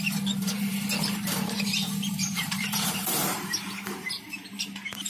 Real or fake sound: fake